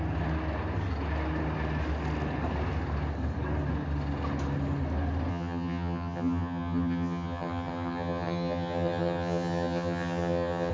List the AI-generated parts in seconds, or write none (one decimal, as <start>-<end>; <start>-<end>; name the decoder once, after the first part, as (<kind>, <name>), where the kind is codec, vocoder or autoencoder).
5.3-10.7 (vocoder, HiFi-GAN)